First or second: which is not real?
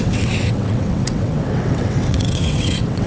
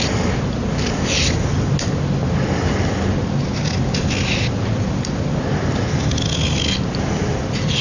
first